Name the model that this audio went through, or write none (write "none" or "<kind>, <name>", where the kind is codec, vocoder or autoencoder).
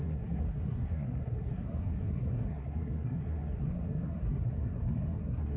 codec, SNAC